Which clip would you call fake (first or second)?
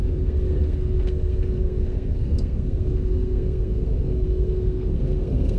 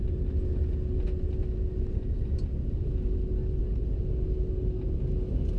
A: first